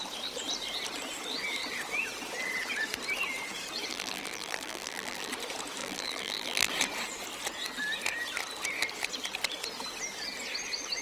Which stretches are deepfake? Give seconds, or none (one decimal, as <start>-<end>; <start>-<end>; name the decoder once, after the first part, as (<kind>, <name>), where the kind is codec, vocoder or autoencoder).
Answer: 3.9-5.3 (vocoder, BigVGAN v2); 5.8-6.7